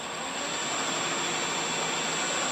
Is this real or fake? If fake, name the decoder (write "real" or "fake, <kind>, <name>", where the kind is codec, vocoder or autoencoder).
real